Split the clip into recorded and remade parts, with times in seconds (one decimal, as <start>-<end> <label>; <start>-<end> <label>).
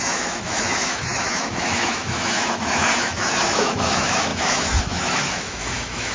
0.0-6.1 remade